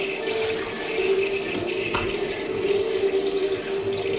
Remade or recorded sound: recorded